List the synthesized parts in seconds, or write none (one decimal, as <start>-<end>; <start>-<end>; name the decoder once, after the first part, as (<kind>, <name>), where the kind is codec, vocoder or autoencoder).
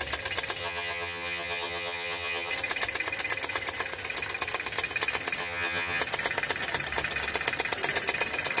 0.6-2.5 (vocoder, HiFi-GAN); 5.4-6.0